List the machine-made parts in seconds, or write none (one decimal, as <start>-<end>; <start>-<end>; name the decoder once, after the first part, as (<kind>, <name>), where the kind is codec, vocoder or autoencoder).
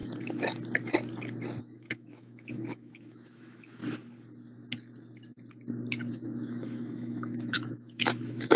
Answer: 1.6-3.8 (autoencoder, DAC-VAE); 6.1-8.6